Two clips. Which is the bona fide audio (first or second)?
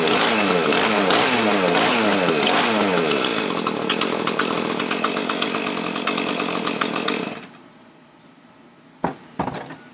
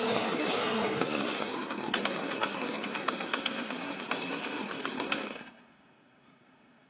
first